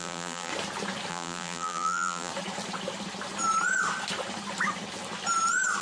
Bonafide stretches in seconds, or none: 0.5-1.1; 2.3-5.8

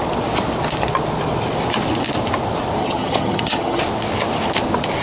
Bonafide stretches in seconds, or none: 0.0-2.8; 3.8-5.0

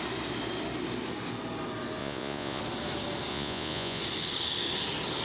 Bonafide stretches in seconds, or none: 0.0-2.0; 2.6-3.3; 4.0-5.2

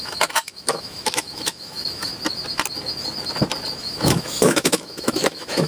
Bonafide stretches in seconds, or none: 2.1-3.8